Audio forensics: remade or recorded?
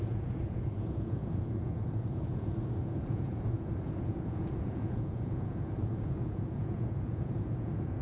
remade